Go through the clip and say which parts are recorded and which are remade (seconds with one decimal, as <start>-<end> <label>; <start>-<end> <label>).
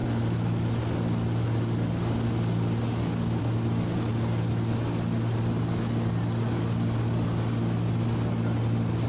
0.0-9.1 recorded